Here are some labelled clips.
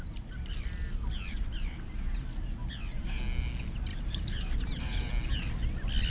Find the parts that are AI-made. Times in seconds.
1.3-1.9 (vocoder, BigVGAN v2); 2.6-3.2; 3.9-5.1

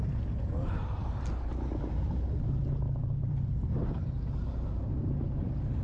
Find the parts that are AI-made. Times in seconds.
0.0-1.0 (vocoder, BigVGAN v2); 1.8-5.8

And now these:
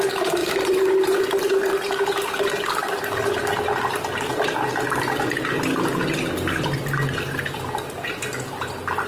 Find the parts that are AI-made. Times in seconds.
0.4-1.2 (vocoder, BigVGAN v2); 1.7-2.3

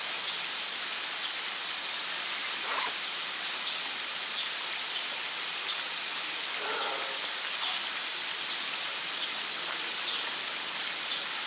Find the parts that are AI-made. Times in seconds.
2.4-3.2 (vocoder, BigVGAN v2)

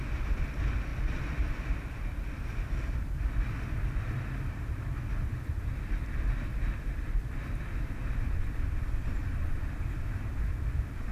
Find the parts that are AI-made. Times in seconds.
none

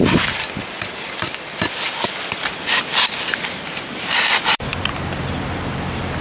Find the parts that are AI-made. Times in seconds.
none